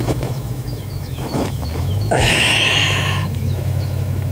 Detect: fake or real fake